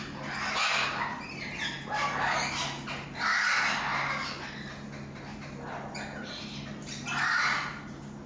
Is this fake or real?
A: real